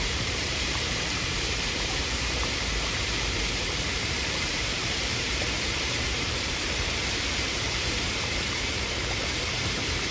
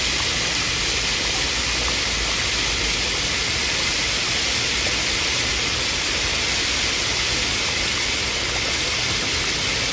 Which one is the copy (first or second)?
first